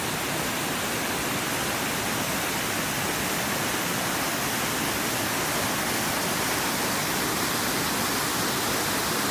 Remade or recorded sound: recorded